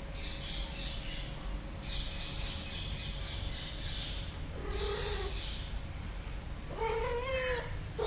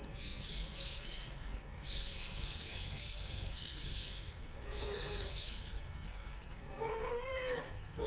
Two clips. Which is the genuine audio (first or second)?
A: first